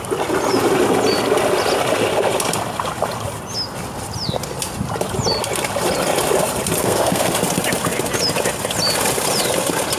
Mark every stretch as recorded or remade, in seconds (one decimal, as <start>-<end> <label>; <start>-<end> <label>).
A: 0.0-6.8 recorded; 6.8-7.3 remade; 7.3-10.0 recorded